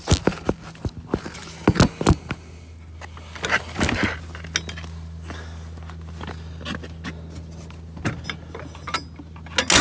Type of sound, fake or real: real